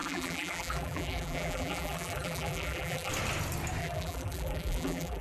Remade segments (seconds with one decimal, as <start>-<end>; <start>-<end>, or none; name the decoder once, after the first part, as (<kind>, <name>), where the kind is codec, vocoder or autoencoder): 0.0-3.1 (vocoder, BigVGAN v2); 3.8-5.2